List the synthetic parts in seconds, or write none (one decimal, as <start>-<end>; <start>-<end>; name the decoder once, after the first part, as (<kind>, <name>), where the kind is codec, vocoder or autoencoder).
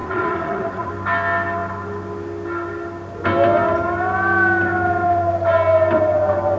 0.0-0.9 (vocoder, Vocos)